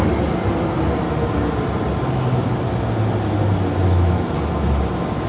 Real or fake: real